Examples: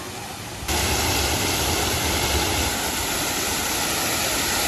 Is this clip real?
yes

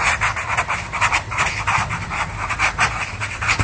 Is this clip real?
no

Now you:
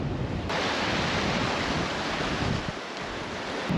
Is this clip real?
yes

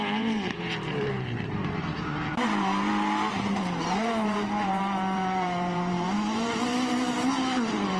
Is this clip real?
no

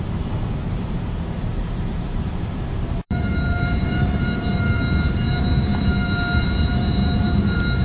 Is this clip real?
no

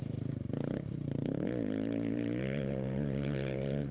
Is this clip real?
no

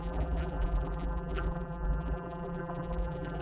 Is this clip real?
no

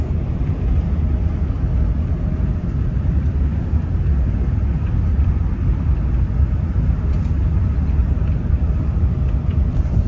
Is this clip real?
no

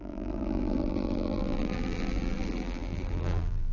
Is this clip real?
no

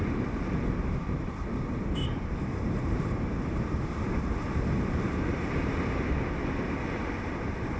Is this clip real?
no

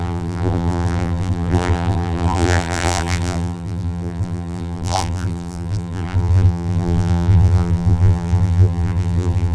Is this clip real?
no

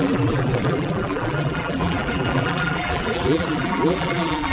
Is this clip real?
no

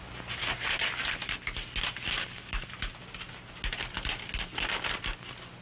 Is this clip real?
yes